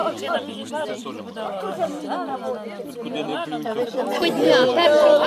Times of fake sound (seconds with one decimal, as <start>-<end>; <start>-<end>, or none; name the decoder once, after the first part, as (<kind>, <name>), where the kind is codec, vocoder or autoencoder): 0.0-0.7 (vocoder, BigVGAN v2); 3.3-4.0